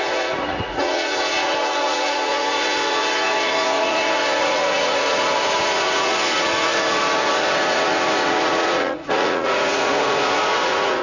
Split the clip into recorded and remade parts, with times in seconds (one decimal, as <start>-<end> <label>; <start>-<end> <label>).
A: 0.0-11.0 remade